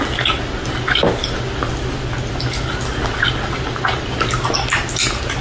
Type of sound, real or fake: real